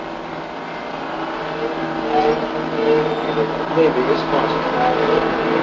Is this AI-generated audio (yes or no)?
no